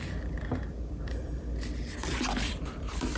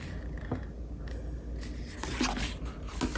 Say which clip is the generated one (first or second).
first